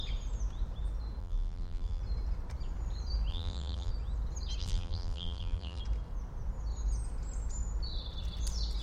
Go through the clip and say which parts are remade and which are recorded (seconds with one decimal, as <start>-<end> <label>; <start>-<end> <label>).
0.0-1.2 recorded; 1.2-2.0 remade; 2.0-3.3 recorded; 3.3-3.9 remade; 3.9-4.6 recorded; 4.6-5.8 remade; 5.8-8.8 recorded